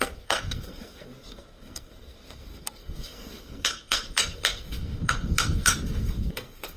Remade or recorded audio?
remade